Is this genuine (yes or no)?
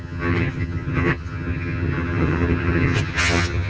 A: no